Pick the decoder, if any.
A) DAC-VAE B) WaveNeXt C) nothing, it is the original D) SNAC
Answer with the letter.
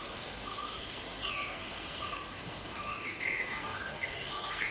D